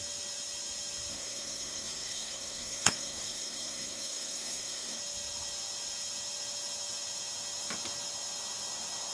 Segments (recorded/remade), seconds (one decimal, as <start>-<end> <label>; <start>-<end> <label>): 0.0-1.1 recorded; 1.1-5.0 remade; 5.0-9.1 recorded